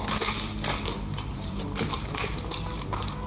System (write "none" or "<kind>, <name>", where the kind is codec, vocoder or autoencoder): vocoder, BigVGAN v2